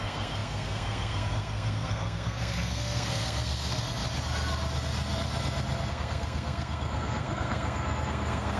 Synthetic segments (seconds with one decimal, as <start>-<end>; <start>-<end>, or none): 0.0-4.0; 5.9-8.6